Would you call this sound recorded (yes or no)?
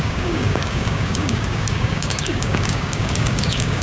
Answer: no